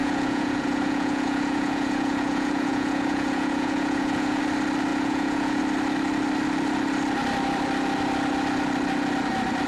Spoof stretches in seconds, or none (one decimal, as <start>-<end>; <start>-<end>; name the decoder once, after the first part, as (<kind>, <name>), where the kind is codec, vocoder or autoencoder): 0.0-4.4 (vocoder, Vocos); 4.9-5.6